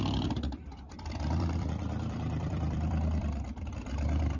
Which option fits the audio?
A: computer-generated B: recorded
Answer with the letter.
A